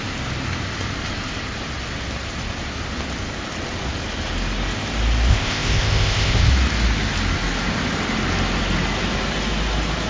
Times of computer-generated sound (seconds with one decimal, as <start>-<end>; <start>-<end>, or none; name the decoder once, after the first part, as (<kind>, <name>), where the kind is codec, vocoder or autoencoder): 5.3-6.5 (codec, ZipCodec)